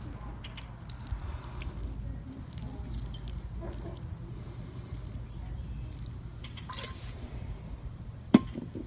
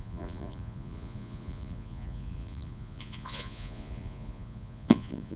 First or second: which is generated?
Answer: second